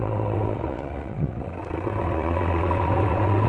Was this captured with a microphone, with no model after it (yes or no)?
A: no